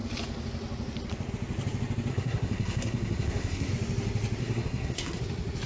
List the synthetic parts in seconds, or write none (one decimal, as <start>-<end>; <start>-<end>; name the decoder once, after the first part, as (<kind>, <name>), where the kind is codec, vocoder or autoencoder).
2.1-3.7 (codec, SNAC); 4.4-5.2